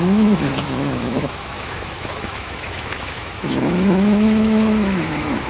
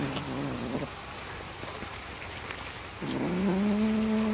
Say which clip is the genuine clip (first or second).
second